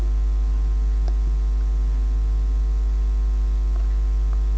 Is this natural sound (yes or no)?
yes